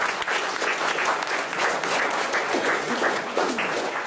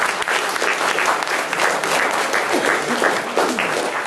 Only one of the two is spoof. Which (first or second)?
first